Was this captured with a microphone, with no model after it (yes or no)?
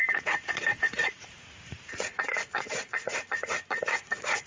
no